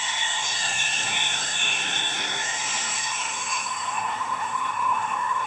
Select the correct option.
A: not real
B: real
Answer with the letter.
A